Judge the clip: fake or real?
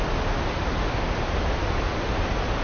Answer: real